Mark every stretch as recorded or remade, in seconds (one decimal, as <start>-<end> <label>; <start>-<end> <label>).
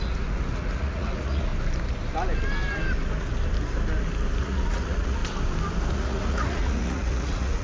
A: 0.0-1.5 remade; 1.5-4.4 recorded; 4.4-5.2 remade; 5.2-5.9 recorded; 5.9-7.6 remade